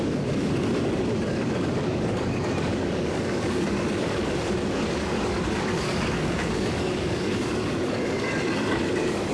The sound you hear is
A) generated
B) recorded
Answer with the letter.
A